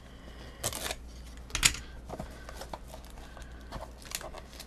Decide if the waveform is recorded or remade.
recorded